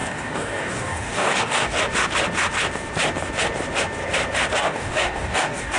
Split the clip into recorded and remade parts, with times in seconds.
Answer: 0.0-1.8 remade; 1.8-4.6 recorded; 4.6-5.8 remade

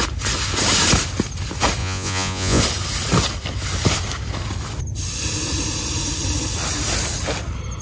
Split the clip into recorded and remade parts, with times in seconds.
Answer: 0.0-1.8 recorded; 1.8-2.6 remade; 2.6-7.8 recorded